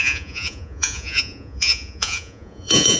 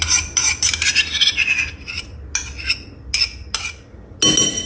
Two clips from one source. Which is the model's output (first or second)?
first